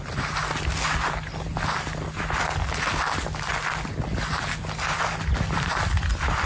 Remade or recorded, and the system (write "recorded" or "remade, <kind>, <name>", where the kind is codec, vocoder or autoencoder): recorded